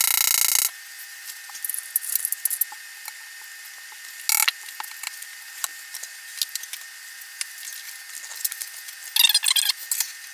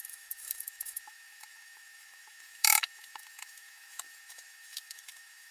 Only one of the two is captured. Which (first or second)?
first